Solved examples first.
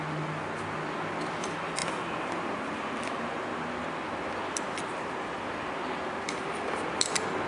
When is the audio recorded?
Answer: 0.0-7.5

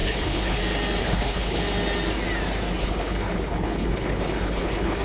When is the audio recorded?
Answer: 0.6-1.0; 1.6-2.8

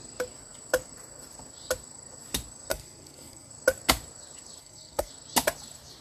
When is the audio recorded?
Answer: 0.0-2.7; 3.5-4.6; 5.1-6.0

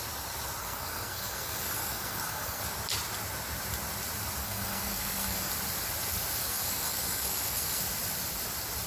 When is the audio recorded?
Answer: 0.0-0.6; 2.6-4.4; 5.5-6.4; 7.8-8.9

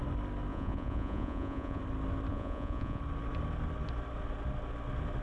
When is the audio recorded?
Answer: 0.0-0.5; 1.8-2.3; 3.0-5.2

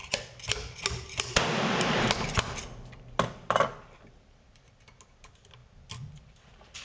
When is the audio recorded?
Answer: 0.0-6.8

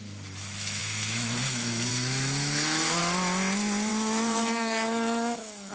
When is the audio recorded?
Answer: 3.0-3.9

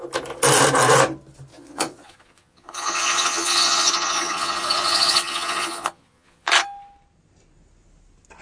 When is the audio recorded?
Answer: 0.0-1.5; 6.5-8.4